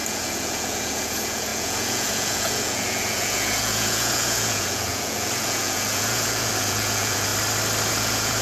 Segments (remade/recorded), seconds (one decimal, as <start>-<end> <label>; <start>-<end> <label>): 0.0-7.3 remade; 7.3-7.9 recorded; 7.9-8.4 remade